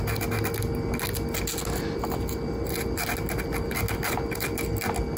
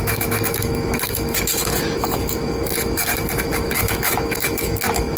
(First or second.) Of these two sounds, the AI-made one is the second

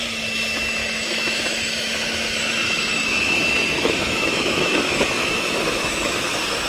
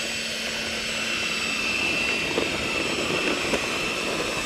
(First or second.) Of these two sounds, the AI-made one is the first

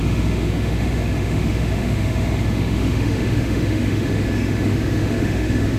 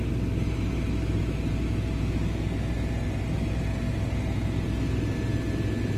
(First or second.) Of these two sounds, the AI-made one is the first